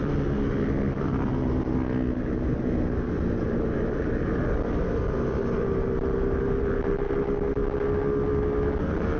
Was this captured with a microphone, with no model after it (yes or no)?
yes